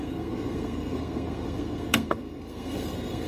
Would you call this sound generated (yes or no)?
yes